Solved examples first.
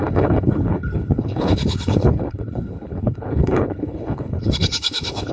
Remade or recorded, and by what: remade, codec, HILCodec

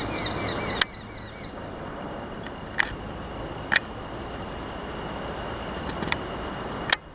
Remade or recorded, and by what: recorded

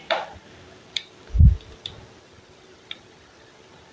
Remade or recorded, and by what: recorded